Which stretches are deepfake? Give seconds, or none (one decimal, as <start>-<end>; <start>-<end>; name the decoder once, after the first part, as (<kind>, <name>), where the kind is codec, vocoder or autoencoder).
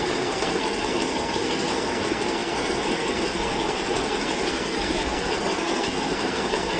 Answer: 0.0-6.8 (codec, SNAC)